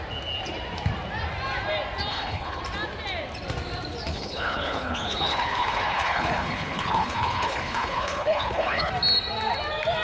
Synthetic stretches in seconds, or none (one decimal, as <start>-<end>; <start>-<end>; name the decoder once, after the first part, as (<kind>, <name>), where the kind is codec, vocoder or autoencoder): 2.1-2.6 (codec, HILCodec); 4.1-8.9